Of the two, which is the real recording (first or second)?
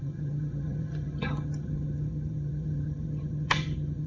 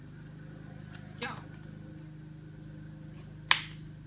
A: second